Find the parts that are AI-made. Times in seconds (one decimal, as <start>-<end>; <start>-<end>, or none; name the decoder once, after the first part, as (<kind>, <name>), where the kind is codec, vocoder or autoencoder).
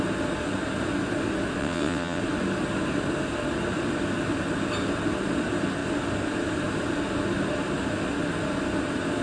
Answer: 1.6-2.2 (vocoder, WaveNeXt)